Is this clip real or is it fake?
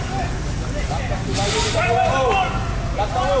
real